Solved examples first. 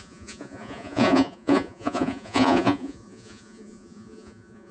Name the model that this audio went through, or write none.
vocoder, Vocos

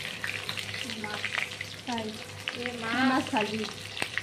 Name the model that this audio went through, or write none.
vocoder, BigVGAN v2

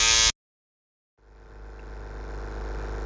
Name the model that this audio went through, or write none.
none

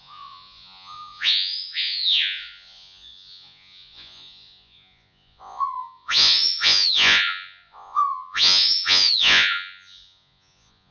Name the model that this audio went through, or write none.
vocoder, Vocos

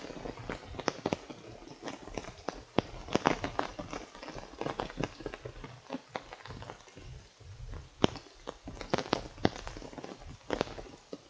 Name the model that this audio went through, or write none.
none